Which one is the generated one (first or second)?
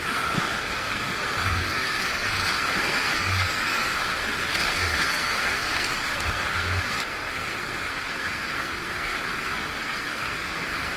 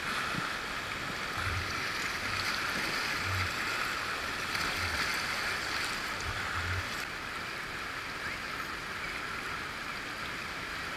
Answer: first